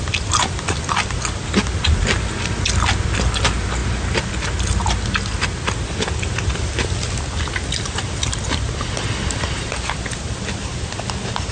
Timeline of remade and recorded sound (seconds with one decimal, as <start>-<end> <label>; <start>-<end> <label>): 0.0-11.5 recorded